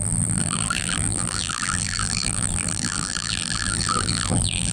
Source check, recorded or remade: remade